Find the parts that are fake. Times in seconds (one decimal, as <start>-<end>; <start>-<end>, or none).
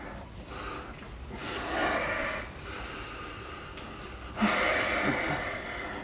none